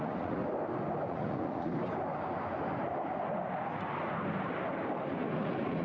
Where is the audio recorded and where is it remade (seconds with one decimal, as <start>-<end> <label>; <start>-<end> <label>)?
0.0-0.4 remade; 0.4-1.1 recorded; 1.1-1.7 remade; 1.7-5.2 recorded; 5.2-5.8 remade